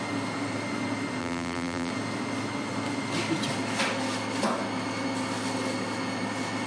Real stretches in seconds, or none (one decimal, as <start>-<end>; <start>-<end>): 0.0-1.2; 1.9-6.7